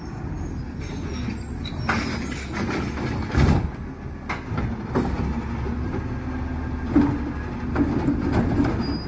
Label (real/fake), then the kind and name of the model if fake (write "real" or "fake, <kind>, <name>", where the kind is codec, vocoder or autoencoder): real